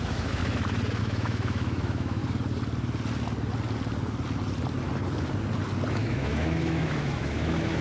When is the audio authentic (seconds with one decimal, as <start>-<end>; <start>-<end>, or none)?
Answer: 0.4-1.0; 2.2-5.9